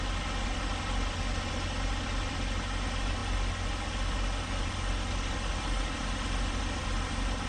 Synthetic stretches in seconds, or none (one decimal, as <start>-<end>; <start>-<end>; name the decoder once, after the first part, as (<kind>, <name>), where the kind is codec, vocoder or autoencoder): none